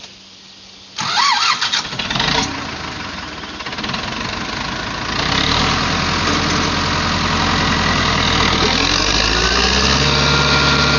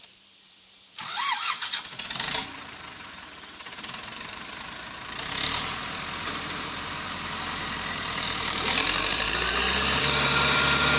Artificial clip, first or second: second